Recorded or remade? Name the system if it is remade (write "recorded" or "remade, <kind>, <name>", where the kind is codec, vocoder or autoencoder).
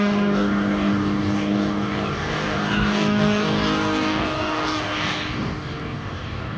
remade, codec, DAC